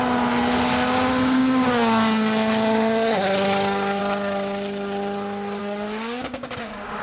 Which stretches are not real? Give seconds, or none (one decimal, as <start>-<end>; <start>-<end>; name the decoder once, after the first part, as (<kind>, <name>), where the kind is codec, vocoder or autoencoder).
1.4-4.0 (codec, DAC); 5.6-7.0

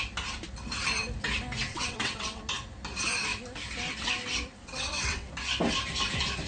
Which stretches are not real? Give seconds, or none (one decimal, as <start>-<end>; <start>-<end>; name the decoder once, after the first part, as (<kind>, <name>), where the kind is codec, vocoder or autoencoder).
1.7-2.4 (vocoder, WaveNeXt); 4.6-5.3

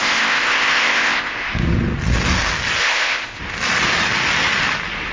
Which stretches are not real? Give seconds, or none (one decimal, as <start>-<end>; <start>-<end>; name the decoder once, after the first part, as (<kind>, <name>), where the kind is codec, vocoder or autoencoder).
0.0-1.5 (codec, ZipCodec); 2.8-3.4